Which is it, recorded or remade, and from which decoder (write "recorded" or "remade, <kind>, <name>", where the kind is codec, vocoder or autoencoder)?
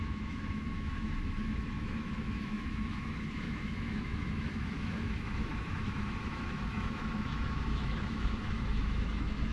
remade, autoencoder, DAC-VAE